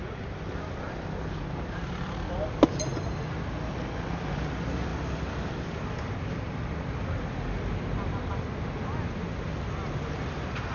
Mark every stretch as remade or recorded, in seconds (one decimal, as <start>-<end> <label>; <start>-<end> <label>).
0.0-10.7 recorded